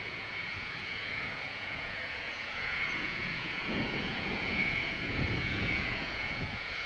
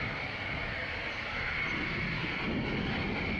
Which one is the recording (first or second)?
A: second